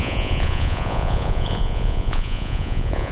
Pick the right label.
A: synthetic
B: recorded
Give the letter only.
A